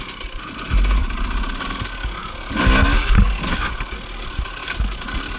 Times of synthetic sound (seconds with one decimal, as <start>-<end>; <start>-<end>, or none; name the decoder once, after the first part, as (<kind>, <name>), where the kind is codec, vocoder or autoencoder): none